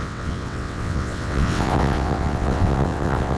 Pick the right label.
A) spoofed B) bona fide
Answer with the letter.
A